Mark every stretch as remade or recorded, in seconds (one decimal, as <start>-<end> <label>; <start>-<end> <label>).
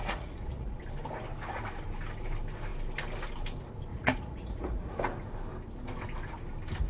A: 0.0-0.8 remade; 0.8-3.9 recorded; 3.9-5.0 remade; 5.0-6.9 recorded